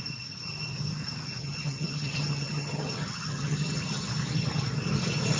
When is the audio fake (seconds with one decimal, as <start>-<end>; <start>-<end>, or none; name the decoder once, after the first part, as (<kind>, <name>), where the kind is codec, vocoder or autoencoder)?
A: 1.4-4.1 (vocoder, HiFi-GAN)